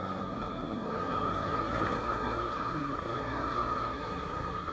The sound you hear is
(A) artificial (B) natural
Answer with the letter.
A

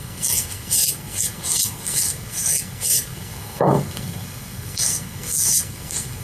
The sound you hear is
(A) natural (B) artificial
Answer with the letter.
B